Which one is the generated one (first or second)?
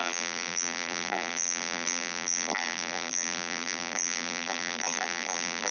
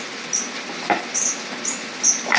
first